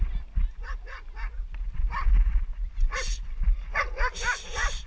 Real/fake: real